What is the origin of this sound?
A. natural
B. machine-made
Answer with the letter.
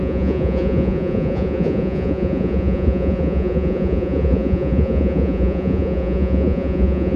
B